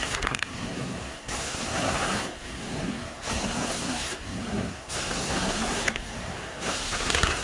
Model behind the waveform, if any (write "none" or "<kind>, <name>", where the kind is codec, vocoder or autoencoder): codec, SNAC